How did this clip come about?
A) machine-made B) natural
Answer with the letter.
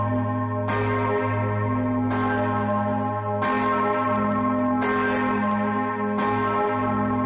B